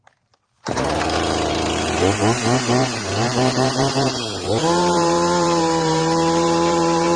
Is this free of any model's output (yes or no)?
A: no